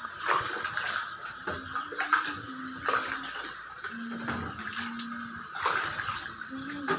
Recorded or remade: recorded